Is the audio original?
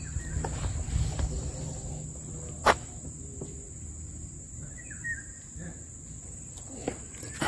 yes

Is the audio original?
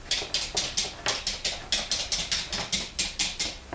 yes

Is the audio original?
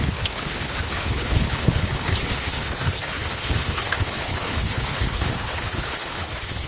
no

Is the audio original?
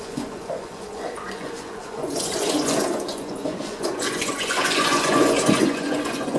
no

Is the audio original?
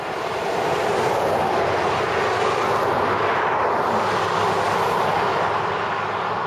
yes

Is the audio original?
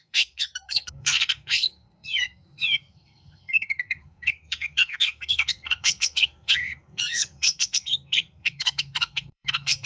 no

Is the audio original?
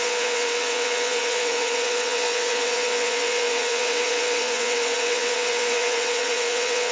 no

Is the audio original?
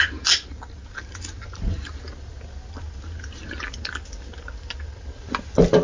yes